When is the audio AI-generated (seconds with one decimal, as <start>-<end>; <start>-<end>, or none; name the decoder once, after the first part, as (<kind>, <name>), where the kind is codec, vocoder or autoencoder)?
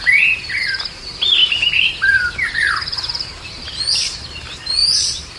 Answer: 1.4-3.8 (vocoder, BigVGAN v2); 4.8-5.4